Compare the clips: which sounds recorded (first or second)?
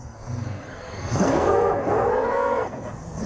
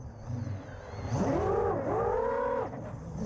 second